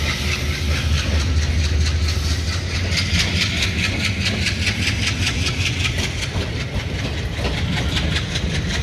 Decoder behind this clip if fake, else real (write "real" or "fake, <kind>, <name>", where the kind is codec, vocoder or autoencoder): real